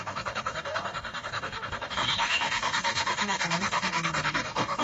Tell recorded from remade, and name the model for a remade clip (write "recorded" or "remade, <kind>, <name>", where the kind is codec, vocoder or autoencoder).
remade, codec, DAC